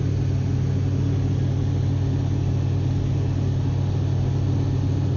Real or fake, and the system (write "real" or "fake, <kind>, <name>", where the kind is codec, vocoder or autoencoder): real